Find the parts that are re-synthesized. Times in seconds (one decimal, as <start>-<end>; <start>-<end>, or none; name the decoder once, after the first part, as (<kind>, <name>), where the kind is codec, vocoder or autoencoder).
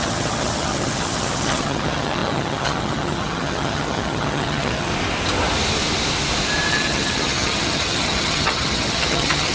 0.0-4.9 (vocoder, HiFi-GAN); 6.7-9.5